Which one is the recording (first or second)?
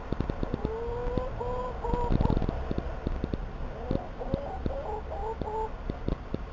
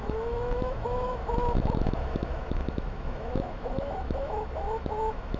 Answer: first